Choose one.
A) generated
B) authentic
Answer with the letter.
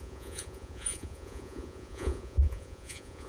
A